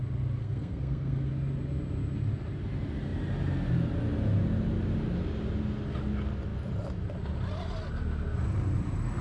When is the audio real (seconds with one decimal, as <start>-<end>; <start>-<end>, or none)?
0.0-0.4; 1.3-9.2